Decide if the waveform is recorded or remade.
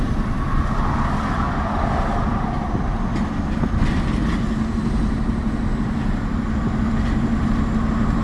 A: recorded